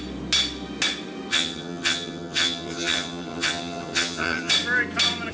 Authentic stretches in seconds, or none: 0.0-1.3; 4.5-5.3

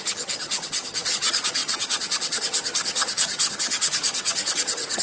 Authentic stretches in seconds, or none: none